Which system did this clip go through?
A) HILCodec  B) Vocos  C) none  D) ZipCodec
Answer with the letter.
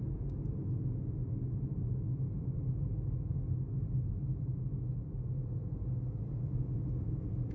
C